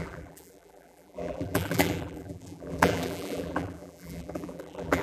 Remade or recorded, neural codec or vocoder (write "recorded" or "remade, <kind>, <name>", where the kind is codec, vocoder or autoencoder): remade, vocoder, BigVGAN v2